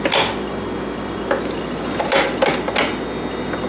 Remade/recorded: recorded